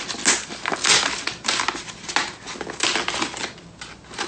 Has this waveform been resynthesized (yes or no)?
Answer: no